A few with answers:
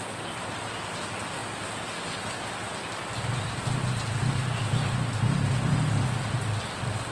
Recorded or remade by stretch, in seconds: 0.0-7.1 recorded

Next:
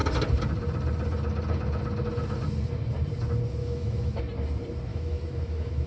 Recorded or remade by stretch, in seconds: 0.0-3.6 recorded; 3.6-4.2 remade; 4.2-4.9 recorded; 4.9-5.9 remade

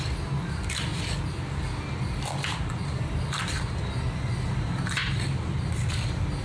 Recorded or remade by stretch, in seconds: 0.0-6.4 recorded

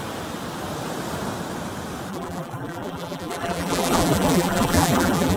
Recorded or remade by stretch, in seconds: 0.0-2.1 recorded; 2.1-5.4 remade

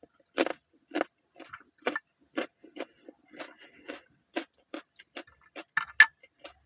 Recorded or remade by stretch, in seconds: 0.0-6.7 recorded

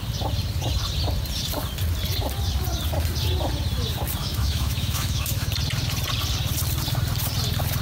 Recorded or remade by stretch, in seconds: 0.0-4.2 recorded; 4.2-5.5 remade; 5.5-7.8 recorded